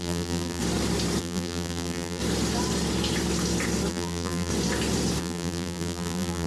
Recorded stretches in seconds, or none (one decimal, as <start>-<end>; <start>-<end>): 0.6-1.2; 2.2-3.9; 4.5-5.2